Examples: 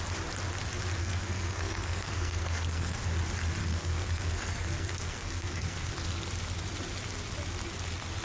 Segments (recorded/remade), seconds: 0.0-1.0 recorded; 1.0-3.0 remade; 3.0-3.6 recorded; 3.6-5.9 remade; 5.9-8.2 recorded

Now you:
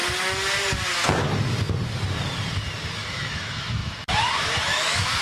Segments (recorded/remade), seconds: 0.0-3.1 recorded; 3.1-5.2 remade

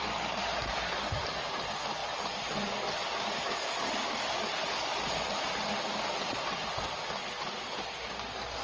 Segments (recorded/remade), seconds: 0.0-8.6 recorded

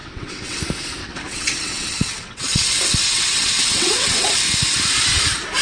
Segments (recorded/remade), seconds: 0.0-0.6 remade; 0.6-1.0 recorded; 1.0-4.4 remade; 4.4-5.6 recorded

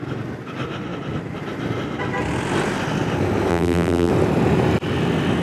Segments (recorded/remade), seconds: 0.0-3.5 recorded; 3.5-4.1 remade; 4.1-5.4 recorded